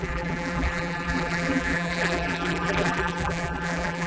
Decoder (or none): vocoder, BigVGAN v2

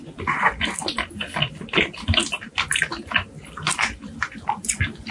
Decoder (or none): none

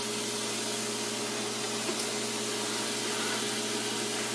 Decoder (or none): none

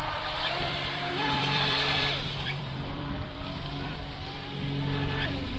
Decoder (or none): vocoder, BigVGAN v2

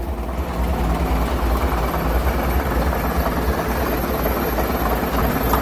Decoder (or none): none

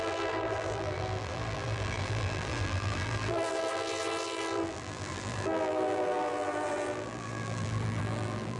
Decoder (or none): vocoder, BigVGAN v2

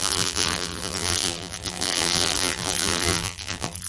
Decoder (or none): vocoder, BigVGAN v2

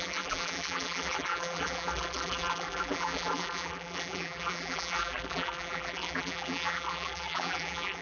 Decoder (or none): vocoder, BigVGAN v2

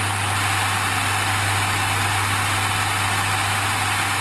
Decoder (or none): none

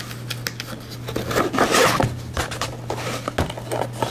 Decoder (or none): none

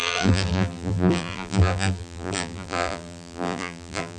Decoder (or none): vocoder, BigVGAN v2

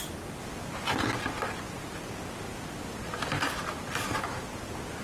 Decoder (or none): none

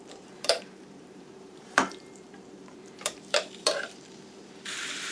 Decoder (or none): vocoder, BigVGAN v2